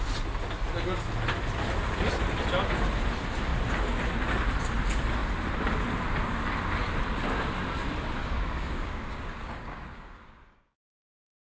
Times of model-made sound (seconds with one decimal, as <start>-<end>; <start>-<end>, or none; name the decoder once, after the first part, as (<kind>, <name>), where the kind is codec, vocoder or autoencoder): 8.2-10.8 (codec, DAC)